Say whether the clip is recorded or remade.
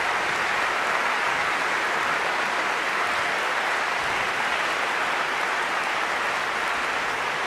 recorded